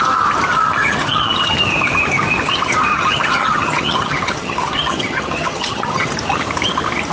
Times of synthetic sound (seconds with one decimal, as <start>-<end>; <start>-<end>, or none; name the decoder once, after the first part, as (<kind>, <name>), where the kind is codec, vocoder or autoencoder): 0.5-1.3 (vocoder, HiFi-GAN); 2.9-6.1